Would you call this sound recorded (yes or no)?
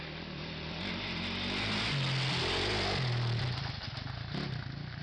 yes